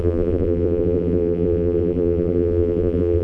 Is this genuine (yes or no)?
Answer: no